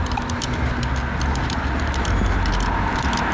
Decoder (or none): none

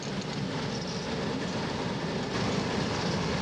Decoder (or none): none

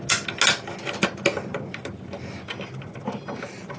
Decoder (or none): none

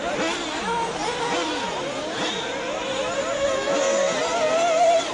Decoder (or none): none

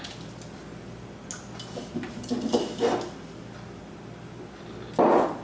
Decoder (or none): none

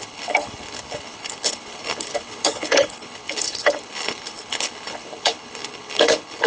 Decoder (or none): codec, HILCodec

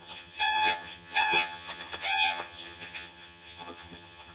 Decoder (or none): vocoder, HiFi-GAN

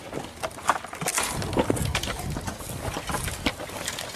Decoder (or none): none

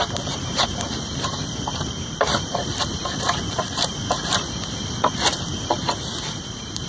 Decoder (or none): vocoder, BigVGAN v2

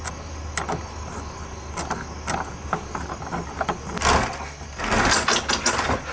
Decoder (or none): none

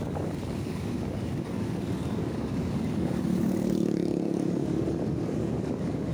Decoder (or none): codec, DAC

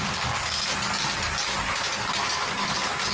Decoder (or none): none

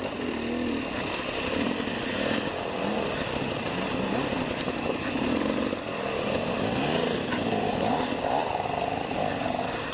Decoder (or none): none